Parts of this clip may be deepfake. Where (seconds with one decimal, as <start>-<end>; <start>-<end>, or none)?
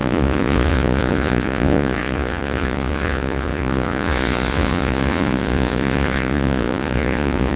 0.0-7.6